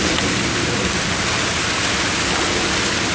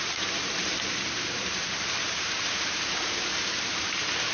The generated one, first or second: second